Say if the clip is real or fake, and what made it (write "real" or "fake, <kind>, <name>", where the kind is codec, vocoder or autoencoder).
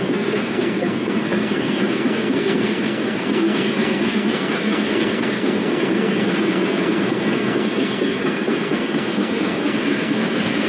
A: fake, codec, SNAC